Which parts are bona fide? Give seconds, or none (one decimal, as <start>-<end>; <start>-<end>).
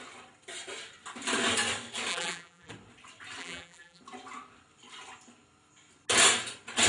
0.0-2.1; 2.7-3.4; 4.0-6.9